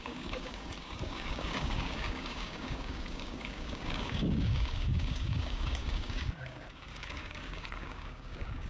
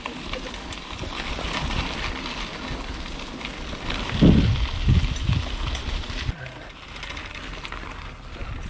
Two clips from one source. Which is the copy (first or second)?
first